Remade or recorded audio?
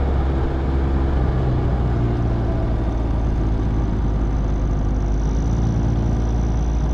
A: recorded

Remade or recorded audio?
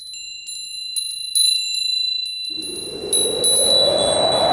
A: recorded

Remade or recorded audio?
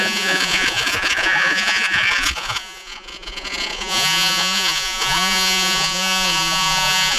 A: remade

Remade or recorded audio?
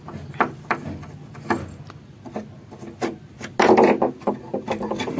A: recorded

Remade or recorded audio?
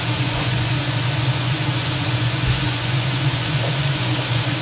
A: remade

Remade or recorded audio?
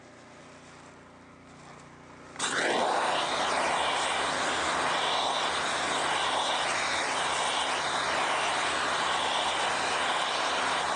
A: recorded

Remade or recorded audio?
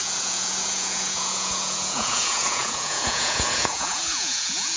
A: remade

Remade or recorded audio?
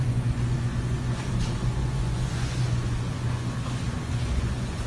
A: remade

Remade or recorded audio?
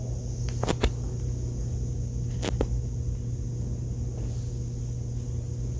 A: recorded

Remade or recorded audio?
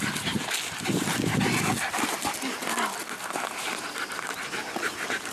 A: recorded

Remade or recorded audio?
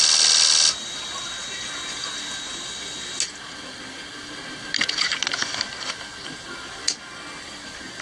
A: recorded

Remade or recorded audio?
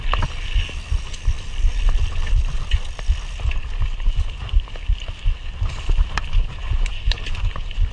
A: recorded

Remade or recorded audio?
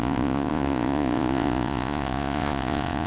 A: remade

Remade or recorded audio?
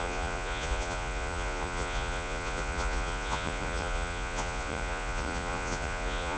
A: remade